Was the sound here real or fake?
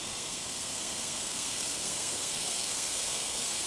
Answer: fake